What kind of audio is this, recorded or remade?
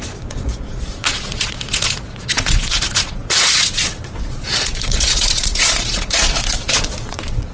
remade